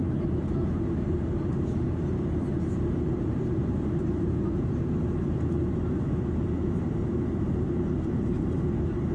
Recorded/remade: remade